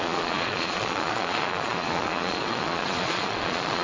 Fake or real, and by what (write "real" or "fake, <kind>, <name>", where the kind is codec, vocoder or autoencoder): fake, vocoder, Vocos